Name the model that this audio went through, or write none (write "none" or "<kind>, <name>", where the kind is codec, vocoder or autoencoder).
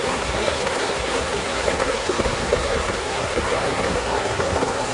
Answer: codec, SNAC